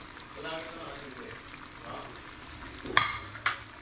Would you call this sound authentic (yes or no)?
yes